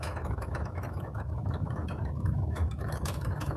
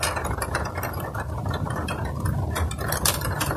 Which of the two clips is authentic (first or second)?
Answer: second